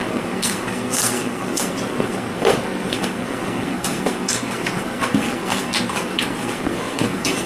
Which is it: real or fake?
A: fake